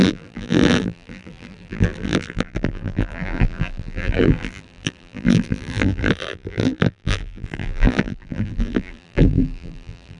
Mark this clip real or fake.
fake